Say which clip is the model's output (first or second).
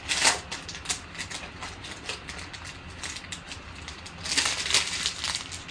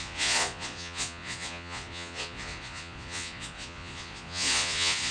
second